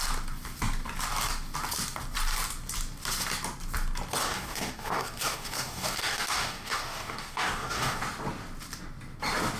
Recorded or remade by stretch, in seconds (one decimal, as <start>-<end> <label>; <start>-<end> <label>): 0.0-4.2 recorded; 4.2-8.0 remade; 8.0-9.6 recorded